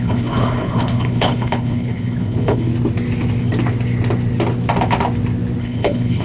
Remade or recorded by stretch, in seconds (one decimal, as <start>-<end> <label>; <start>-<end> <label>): 0.0-2.7 remade; 2.7-5.6 recorded; 5.6-6.2 remade